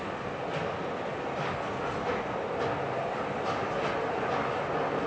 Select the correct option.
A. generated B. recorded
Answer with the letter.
B